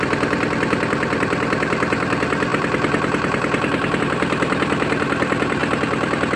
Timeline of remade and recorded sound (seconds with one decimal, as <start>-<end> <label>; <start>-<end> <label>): 0.0-5.6 remade; 5.6-6.4 recorded